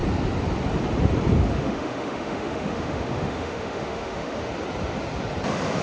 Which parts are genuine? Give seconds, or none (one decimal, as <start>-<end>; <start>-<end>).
0.0-1.5; 4.5-5.8